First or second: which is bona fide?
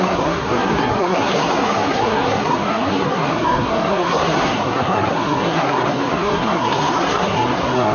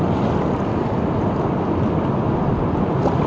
second